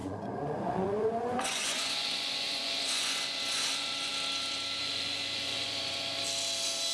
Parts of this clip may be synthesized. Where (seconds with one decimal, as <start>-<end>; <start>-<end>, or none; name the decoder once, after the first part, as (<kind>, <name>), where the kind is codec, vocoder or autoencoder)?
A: 0.0-4.1 (vocoder, Vocos); 4.8-6.2